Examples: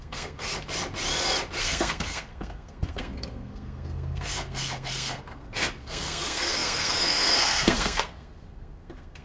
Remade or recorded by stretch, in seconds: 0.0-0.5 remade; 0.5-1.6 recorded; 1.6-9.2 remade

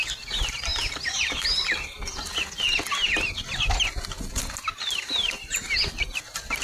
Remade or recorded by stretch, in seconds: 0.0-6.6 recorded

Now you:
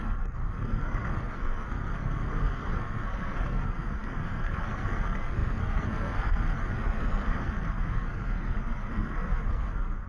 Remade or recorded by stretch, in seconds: 0.0-10.1 remade

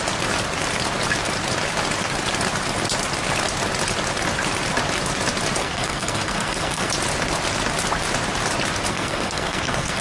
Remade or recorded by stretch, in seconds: 0.0-5.6 recorded; 5.6-6.9 remade; 6.9-8.9 recorded; 8.9-10.0 remade

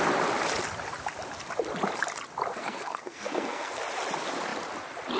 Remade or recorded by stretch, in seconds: 0.0-2.5 recorded; 2.5-3.8 remade; 3.8-5.2 recorded